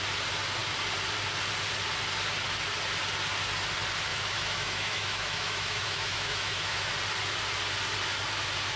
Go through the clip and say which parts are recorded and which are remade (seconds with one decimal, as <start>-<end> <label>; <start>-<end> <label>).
0.0-4.1 recorded; 4.1-6.9 remade; 6.9-8.8 recorded